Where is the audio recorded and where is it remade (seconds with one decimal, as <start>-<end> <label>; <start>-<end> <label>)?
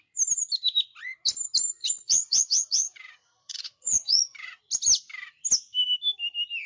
0.0-1.8 recorded; 1.8-4.6 remade; 4.6-6.7 recorded